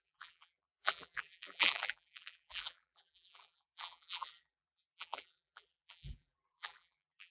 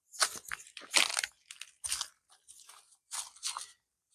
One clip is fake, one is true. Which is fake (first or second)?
first